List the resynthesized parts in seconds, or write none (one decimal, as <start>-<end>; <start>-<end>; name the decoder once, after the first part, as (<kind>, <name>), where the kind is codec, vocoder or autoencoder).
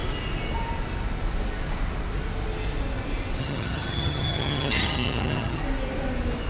3.4-5.6 (vocoder, HiFi-GAN)